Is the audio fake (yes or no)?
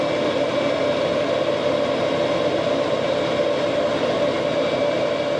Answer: no